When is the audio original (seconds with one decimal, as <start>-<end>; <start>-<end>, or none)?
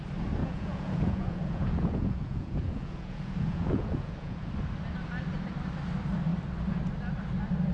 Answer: 0.0-0.4; 4.5-7.7